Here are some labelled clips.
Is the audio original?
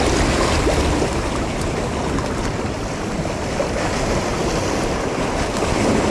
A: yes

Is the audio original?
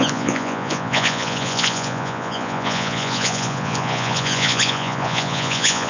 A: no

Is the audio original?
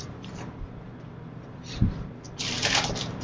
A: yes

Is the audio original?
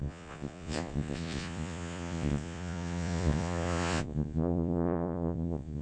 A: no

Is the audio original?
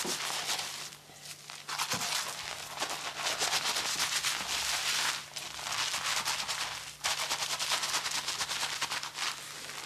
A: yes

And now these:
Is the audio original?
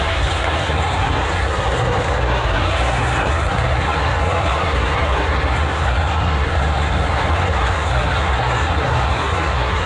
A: no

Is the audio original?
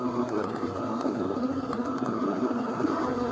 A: no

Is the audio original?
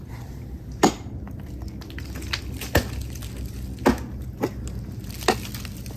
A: yes